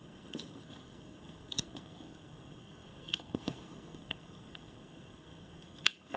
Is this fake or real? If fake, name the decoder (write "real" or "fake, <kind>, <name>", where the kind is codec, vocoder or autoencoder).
fake, codec, SNAC